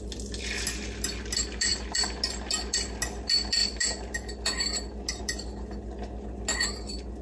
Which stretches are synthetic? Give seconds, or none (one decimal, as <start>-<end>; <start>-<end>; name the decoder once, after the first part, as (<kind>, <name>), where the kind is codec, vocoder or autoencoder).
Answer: none